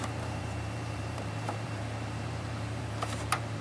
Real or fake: fake